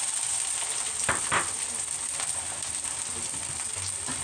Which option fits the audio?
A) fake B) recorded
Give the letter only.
A